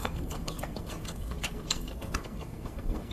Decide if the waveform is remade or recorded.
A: remade